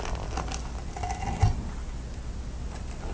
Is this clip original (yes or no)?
yes